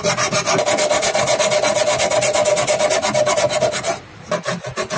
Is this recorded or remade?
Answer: recorded